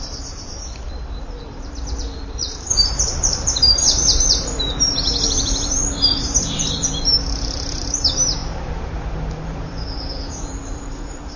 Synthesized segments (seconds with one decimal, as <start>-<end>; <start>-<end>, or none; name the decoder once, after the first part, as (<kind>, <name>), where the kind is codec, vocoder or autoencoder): 0.0-11.4 (vocoder, BigVGAN v2)